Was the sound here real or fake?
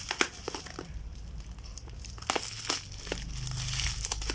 real